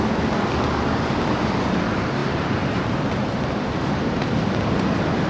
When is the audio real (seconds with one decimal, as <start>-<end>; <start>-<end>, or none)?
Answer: 0.0-5.3